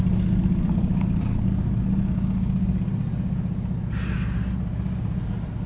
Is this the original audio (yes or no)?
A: yes